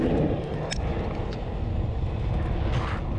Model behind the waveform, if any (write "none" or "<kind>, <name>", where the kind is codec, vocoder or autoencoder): none